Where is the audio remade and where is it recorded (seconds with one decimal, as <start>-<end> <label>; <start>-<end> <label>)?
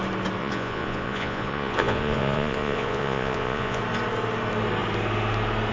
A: 0.0-0.4 recorded; 0.4-3.8 remade; 3.8-5.7 recorded